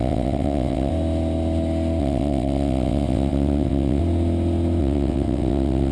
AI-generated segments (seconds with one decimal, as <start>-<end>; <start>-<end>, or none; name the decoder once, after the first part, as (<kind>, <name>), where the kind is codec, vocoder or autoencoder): 0.0-0.9 (vocoder, WaveNeXt); 2.0-4.0; 4.8-5.9